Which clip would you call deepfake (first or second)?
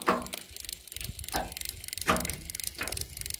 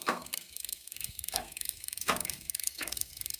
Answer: second